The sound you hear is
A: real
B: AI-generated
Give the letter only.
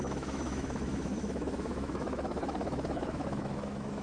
B